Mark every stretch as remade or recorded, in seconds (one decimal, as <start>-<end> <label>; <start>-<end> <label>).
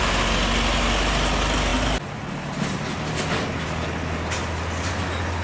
0.0-5.4 recorded